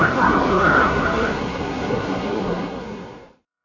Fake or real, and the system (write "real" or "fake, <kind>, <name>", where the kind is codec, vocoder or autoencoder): fake, codec, SNAC